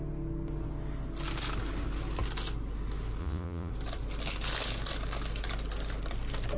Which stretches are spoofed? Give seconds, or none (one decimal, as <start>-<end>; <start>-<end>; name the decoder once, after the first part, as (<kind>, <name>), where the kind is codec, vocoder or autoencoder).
3.2-3.7 (vocoder, Vocos)